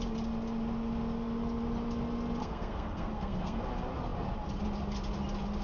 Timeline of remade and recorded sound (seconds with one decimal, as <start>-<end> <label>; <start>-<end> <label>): 0.0-2.4 recorded; 2.4-3.6 remade; 3.6-5.6 recorded